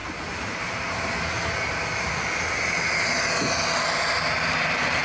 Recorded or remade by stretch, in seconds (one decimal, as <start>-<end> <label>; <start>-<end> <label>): 0.0-5.0 recorded